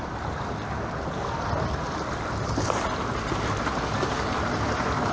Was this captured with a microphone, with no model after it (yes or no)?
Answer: yes